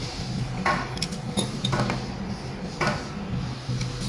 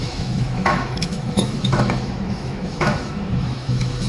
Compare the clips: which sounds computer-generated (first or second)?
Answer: second